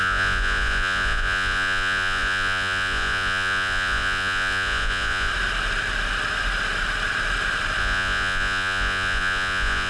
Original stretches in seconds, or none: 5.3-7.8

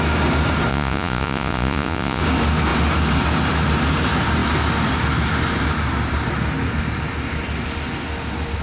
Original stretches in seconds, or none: 0.0-0.7; 2.2-8.6

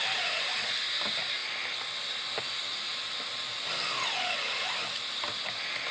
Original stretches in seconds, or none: 0.0-5.9